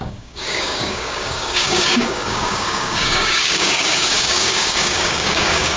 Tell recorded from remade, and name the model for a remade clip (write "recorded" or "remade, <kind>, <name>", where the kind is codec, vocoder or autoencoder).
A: remade, codec, DAC